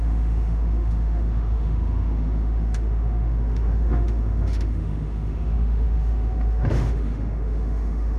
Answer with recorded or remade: remade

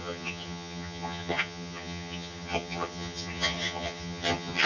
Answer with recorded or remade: remade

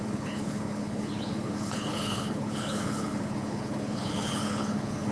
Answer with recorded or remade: remade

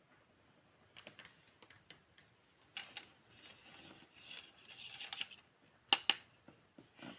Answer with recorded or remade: recorded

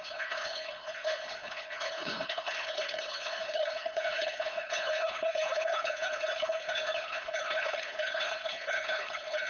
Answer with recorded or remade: remade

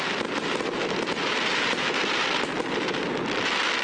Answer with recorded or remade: recorded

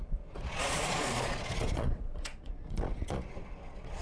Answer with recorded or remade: remade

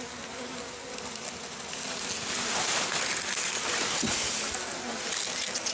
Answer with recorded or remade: recorded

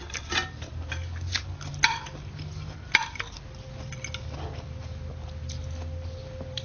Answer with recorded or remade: recorded